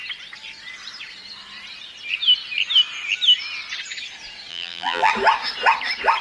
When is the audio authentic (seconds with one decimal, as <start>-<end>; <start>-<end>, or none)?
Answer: 0.0-4.5; 5.1-6.2